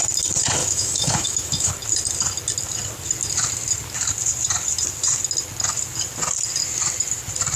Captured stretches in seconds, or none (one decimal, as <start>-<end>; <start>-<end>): 0.0-0.6; 1.7-7.6